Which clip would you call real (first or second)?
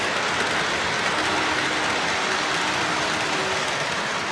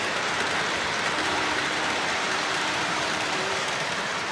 first